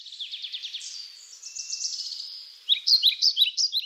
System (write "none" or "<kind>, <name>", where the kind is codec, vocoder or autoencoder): vocoder, BigVGAN v2